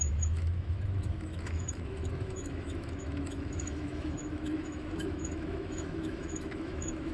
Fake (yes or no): yes